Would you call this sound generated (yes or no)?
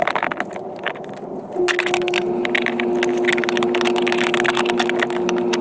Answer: no